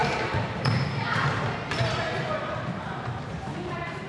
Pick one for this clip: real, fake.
fake